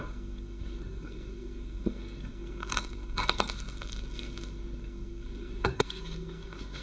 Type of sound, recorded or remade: remade